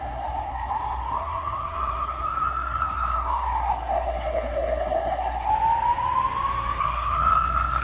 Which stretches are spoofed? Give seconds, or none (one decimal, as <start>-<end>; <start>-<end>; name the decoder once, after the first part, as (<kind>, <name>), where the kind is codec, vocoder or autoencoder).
0.0-5.5 (codec, SNAC); 6.8-7.8